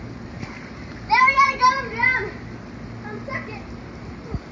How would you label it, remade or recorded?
recorded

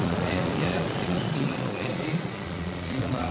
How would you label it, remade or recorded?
remade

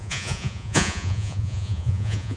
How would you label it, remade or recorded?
remade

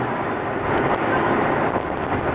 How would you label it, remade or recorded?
recorded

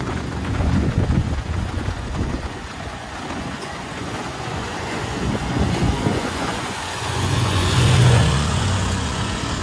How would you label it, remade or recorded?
remade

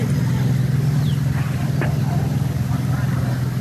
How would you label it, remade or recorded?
recorded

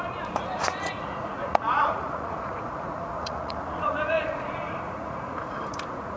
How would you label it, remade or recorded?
remade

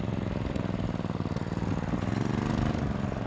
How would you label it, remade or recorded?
recorded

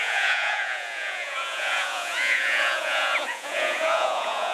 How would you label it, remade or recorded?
remade